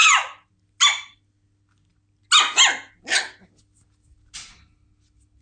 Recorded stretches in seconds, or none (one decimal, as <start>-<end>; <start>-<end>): 0.0-5.4